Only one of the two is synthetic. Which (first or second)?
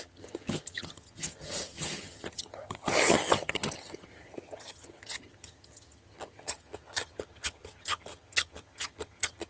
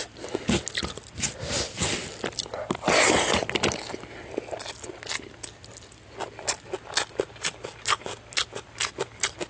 first